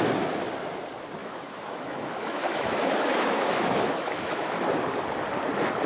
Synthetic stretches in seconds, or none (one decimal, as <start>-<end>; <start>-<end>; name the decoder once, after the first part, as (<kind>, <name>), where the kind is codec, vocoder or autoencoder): 1.2-4.7 (autoencoder, DAC-VAE)

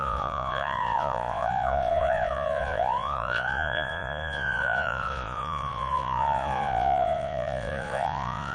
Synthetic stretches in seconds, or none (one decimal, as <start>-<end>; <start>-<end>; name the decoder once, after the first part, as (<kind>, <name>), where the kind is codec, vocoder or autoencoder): 0.0-8.5 (vocoder, Vocos)

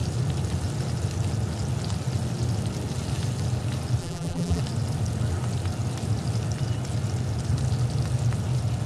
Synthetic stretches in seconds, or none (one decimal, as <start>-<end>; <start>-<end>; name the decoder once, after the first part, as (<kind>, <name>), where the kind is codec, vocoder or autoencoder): 4.0-4.6 (vocoder, BigVGAN v2)

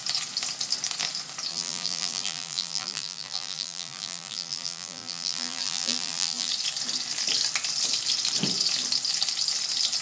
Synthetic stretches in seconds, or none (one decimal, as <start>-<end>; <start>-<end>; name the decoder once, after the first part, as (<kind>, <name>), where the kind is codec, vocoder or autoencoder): 1.5-6.5 (vocoder, BigVGAN v2)

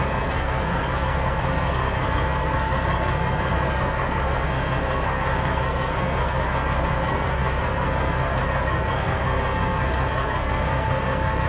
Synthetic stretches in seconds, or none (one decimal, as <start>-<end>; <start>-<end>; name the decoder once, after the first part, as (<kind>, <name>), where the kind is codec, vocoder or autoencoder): 0.0-11.5 (codec, SNAC)

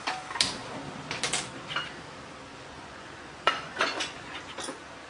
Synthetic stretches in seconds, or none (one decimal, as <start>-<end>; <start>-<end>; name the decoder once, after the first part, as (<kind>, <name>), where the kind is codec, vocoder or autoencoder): 2.5-4.4 (vocoder, Vocos)